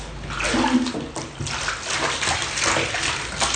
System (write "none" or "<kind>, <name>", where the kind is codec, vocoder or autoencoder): none